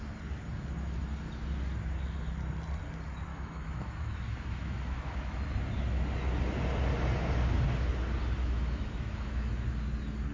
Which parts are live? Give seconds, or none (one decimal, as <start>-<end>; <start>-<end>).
0.0-3.3; 5.4-8.4; 9.6-10.3